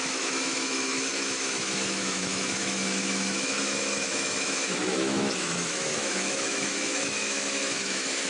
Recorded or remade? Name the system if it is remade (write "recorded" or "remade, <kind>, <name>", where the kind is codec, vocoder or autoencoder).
remade, autoencoder, DAC-VAE